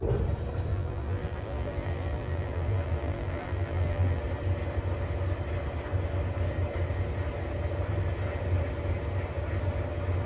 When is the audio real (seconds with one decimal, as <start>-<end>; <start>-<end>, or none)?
0.0-0.7; 4.2-10.3